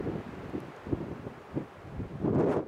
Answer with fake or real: real